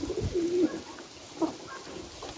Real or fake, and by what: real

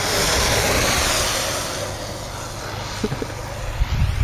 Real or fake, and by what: real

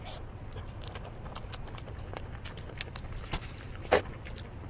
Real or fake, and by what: real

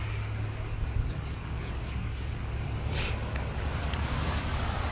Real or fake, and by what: fake, codec, DAC